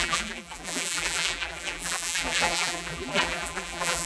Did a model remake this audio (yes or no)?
yes